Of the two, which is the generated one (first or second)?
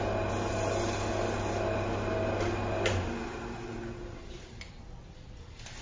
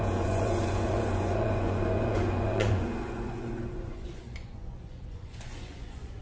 second